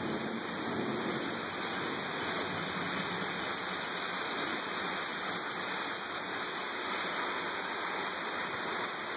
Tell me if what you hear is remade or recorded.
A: recorded